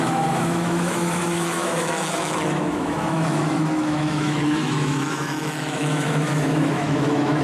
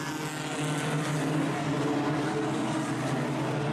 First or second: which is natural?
second